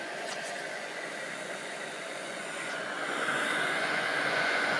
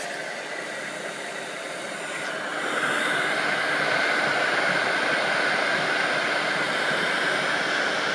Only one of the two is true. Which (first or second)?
second